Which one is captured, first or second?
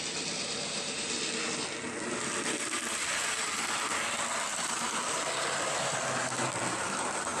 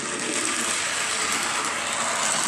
second